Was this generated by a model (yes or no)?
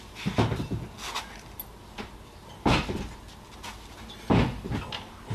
no